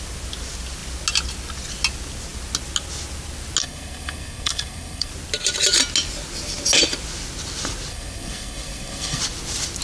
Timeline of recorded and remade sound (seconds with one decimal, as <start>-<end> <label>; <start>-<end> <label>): 0.0-3.6 recorded; 3.6-5.1 remade; 5.1-7.9 recorded; 7.9-9.2 remade; 9.2-9.8 recorded